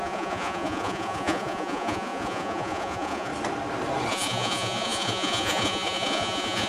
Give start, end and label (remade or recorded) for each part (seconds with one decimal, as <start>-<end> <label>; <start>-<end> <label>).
0.0-3.3 remade; 3.3-4.1 recorded; 4.1-6.7 remade